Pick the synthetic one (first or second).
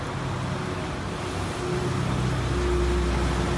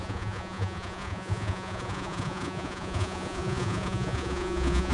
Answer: second